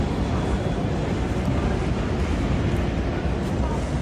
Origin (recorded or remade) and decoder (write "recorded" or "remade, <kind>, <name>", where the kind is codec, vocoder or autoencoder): recorded